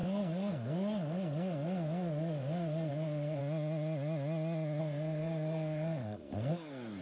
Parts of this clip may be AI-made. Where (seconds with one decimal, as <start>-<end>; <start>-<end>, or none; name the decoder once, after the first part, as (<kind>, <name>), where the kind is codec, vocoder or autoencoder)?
0.0-3.4 (codec, SNAC); 4.8-7.0